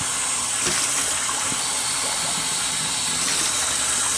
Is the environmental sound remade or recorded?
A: recorded